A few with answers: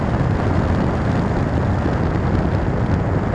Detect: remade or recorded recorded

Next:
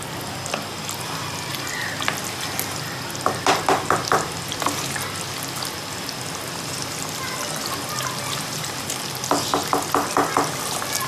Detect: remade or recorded recorded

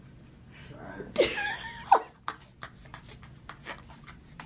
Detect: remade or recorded recorded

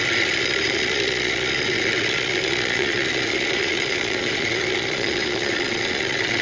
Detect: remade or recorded remade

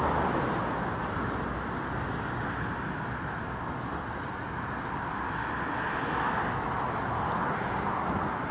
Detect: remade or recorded recorded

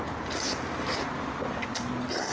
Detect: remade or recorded recorded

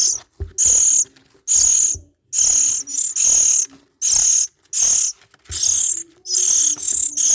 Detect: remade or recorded recorded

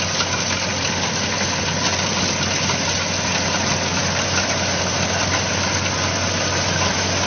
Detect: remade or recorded recorded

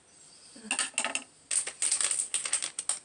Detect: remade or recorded recorded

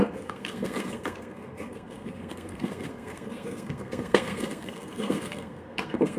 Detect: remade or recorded remade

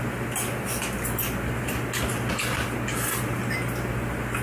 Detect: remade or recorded recorded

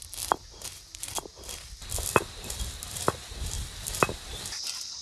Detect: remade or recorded remade